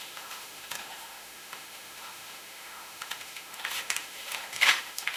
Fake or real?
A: fake